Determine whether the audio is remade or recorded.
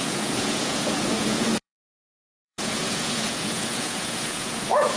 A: remade